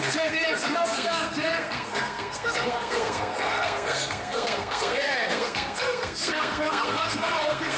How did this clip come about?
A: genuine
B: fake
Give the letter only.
B